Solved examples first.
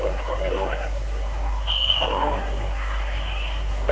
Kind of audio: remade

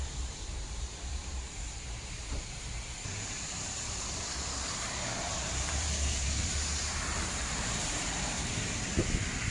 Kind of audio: remade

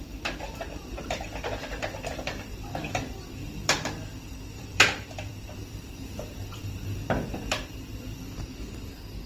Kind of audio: remade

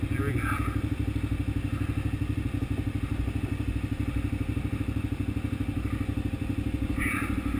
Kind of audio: recorded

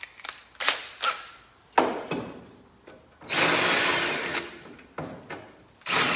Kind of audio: recorded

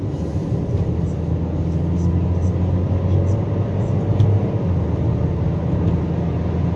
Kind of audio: recorded